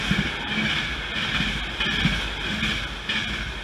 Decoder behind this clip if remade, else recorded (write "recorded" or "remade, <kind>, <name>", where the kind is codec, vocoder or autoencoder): recorded